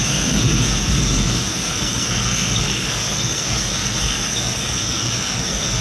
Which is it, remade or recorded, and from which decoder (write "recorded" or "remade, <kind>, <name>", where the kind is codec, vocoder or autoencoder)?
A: remade, codec, SNAC